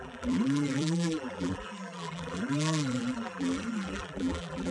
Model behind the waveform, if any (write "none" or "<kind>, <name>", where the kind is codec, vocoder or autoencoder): vocoder, BigVGAN v2